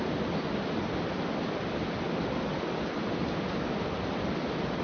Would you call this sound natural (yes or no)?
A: yes